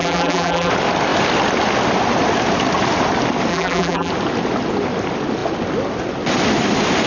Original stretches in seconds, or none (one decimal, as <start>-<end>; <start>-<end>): 0.7-3.5; 4.1-7.1